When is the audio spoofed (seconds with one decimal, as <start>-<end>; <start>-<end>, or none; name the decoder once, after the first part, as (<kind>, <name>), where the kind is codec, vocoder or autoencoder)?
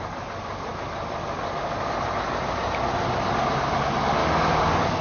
4.2-5.0 (codec, DAC)